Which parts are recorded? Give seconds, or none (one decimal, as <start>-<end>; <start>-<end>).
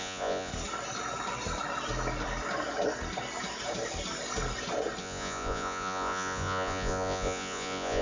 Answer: 0.5-5.0